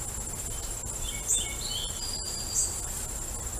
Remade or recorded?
recorded